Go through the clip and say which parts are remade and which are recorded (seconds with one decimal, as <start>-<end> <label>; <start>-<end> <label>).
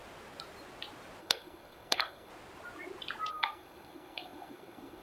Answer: 0.0-1.2 recorded; 1.2-2.3 remade; 2.3-3.3 recorded; 3.3-5.0 remade